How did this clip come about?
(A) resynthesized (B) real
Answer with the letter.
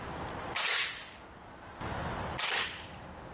B